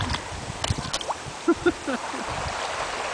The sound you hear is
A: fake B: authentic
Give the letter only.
B